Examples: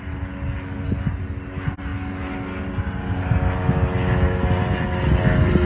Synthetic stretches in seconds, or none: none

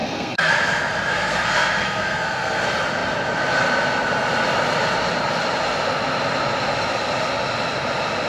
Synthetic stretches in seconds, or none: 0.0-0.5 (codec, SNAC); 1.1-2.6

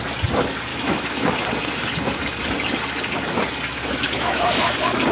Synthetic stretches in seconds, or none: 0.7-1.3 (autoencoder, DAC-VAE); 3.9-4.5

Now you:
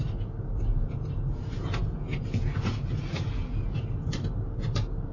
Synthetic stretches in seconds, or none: 0.7-3.8 (vocoder, Vocos)